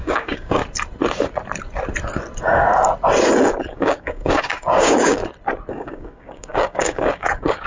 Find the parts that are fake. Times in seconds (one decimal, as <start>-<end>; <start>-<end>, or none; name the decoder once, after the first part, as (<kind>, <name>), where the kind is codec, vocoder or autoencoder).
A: 0.0-0.6 (codec, DAC); 3.7-5.2; 5.7-7.7